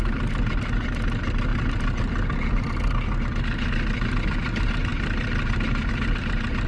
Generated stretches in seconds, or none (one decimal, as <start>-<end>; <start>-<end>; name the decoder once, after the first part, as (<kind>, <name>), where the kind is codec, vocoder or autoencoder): none